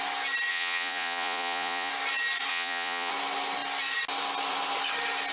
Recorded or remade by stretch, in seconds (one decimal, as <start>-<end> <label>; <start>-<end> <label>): 0.0-0.5 recorded; 0.5-1.9 remade; 1.9-2.5 recorded; 2.5-3.1 remade; 3.1-5.3 recorded